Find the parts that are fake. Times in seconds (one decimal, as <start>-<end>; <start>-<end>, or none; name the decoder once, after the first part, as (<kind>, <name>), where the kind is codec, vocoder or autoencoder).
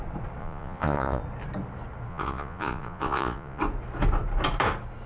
0.4-1.2 (vocoder, Vocos); 2.1-3.6